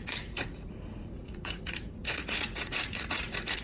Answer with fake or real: fake